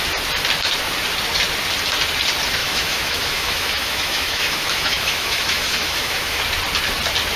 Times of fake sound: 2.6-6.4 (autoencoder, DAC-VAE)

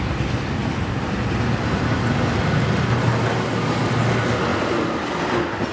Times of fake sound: none

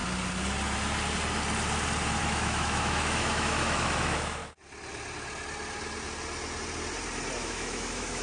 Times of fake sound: 2.2-4.4 (autoencoder, DAC-VAE); 7.4-8.2

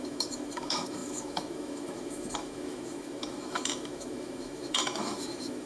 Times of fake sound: 0.0-5.7 (autoencoder, DAC-VAE)

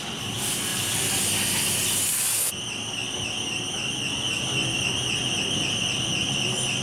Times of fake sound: none

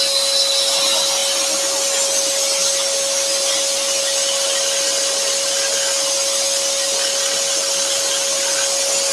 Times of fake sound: none

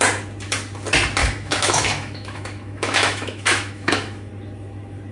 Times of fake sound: 1.2-4.3 (autoencoder, DAC-VAE)